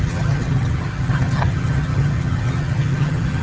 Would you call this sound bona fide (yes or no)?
no